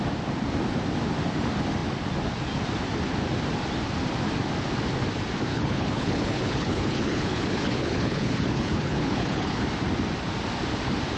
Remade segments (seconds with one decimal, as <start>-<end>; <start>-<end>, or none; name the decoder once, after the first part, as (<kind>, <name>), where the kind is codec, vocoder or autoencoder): 5.5-9.6 (codec, HILCodec)